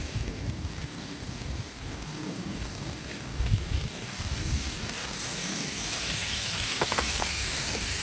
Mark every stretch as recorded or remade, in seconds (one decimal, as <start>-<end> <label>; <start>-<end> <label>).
0.0-8.0 remade